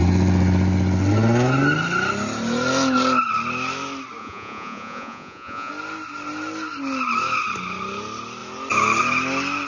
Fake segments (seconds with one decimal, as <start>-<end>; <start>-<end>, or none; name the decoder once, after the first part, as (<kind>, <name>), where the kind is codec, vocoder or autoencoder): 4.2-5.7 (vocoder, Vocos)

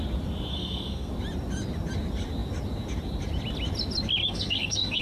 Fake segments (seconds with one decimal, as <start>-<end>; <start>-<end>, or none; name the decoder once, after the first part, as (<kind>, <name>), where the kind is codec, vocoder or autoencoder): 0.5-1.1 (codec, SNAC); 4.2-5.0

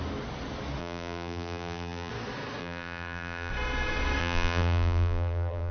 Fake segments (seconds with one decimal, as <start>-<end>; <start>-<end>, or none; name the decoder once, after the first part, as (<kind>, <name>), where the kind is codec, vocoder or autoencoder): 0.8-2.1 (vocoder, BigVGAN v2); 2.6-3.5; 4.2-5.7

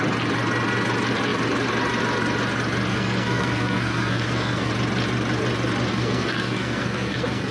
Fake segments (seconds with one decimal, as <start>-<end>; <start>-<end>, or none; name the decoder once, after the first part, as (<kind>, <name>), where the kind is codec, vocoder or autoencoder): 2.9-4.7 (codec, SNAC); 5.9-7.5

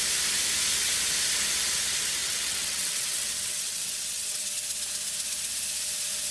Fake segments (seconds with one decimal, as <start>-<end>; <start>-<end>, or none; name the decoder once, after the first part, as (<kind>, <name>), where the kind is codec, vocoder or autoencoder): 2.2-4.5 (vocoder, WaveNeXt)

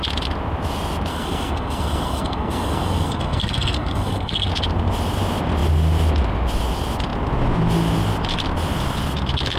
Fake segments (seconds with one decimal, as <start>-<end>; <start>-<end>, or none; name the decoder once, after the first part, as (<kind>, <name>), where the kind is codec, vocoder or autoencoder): 1.1-4.5 (codec, SNAC)

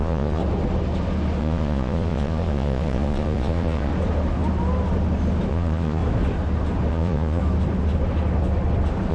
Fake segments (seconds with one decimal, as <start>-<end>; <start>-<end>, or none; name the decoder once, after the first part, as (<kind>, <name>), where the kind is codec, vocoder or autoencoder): 0.0-0.4 (vocoder, Vocos); 1.4-3.9; 5.5-6.0; 6.9-7.4

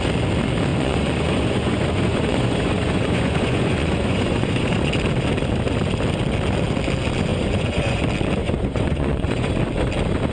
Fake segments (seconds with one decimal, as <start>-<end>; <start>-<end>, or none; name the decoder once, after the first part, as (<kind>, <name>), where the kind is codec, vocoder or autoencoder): 0.7-4.9 (vocoder, Vocos); 7.3-8.0; 8.4-9.5